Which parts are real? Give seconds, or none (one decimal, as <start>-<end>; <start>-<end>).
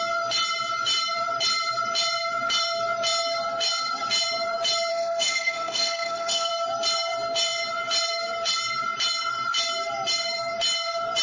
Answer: 0.0-4.9; 6.5-11.2